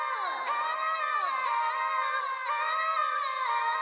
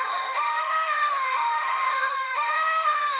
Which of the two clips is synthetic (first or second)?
second